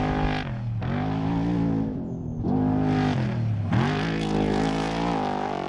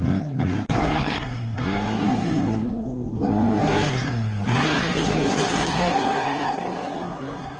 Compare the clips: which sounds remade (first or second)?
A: second